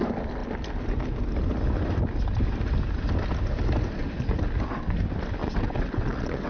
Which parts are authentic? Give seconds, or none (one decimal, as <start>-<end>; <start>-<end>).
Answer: 0.0-5.4